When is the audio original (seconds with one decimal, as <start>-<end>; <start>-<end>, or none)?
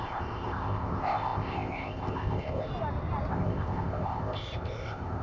2.7-3.3